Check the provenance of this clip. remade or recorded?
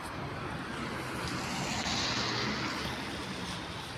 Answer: recorded